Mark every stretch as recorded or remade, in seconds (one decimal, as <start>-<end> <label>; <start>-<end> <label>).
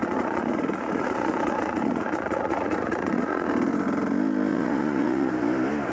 0.0-3.5 remade; 3.5-4.5 recorded; 4.5-5.3 remade; 5.3-5.9 recorded